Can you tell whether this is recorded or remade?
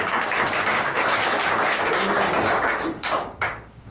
remade